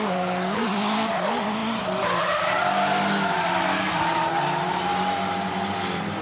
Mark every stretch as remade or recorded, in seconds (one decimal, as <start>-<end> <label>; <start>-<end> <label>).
0.0-6.2 recorded